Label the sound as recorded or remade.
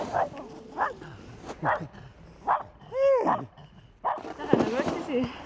recorded